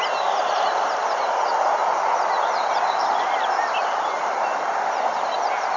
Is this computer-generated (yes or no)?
no